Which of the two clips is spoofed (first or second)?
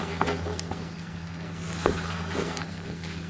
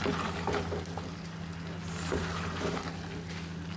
first